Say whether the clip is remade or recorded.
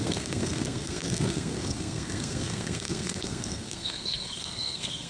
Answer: remade